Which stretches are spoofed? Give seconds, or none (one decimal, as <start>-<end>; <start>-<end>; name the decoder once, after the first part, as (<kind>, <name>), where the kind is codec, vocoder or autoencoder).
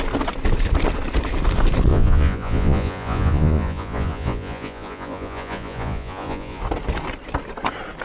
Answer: 1.9-6.6 (vocoder, Vocos)